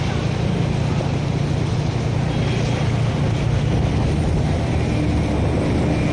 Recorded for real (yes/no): yes